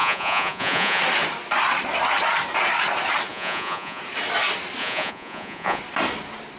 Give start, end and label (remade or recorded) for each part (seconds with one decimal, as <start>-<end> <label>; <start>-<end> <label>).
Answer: 0.0-1.0 remade; 1.0-3.3 recorded; 3.3-4.0 remade; 4.0-4.8 recorded; 4.8-5.8 remade; 5.8-6.6 recorded